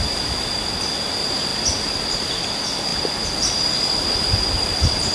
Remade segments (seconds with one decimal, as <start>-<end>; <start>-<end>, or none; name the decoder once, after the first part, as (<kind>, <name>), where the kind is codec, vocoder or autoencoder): none

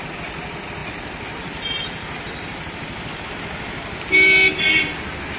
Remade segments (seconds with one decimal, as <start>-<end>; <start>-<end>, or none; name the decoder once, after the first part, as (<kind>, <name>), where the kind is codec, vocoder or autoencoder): none